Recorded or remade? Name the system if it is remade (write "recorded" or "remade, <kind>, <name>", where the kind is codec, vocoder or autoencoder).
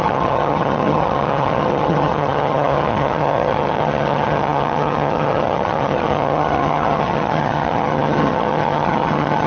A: remade, vocoder, HiFi-GAN